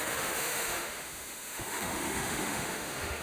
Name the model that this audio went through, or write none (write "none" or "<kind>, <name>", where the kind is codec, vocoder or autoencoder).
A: autoencoder, DAC-VAE